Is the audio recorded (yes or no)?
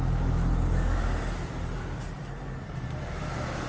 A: yes